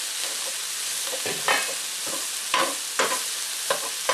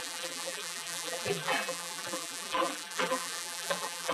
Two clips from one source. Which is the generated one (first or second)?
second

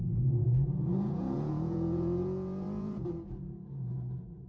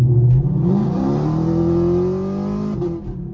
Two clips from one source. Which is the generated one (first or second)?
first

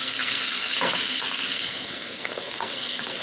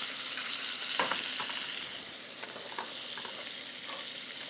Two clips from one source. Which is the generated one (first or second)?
first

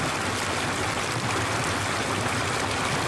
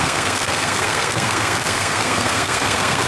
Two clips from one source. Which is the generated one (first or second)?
second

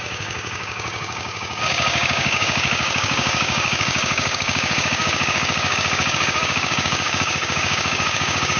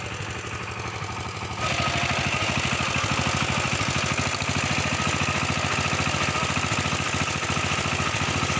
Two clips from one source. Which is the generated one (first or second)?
first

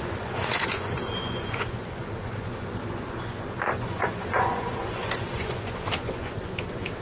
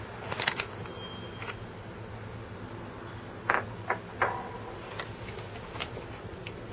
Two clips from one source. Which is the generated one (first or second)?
first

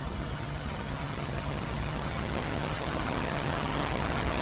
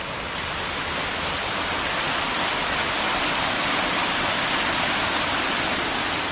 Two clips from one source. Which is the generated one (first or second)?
first